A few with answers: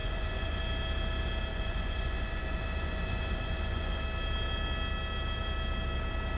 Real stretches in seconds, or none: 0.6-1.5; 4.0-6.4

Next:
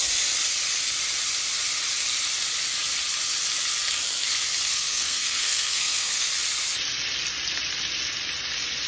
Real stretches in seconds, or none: 0.0-4.7; 6.3-8.9

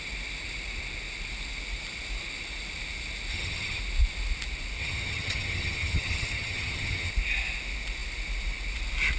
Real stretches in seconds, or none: 0.0-3.3; 3.8-4.8; 7.1-9.2

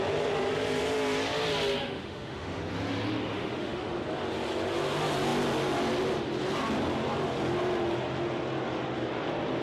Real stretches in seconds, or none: 0.0-1.8; 2.6-3.3; 4.0-9.6

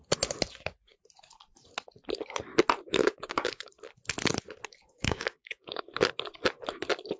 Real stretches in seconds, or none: 0.0-3.0; 3.7-4.8; 5.8-7.2

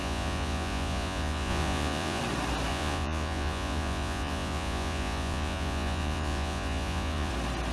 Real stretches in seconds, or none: 2.2-2.7; 7.3-7.7